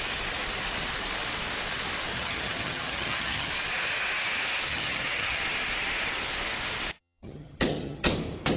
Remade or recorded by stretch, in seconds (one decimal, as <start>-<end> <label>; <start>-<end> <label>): 0.0-2.1 recorded; 2.1-3.5 remade; 3.5-4.7 recorded; 4.7-5.4 remade; 5.4-7.0 recorded; 7.0-8.1 remade; 8.1-8.6 recorded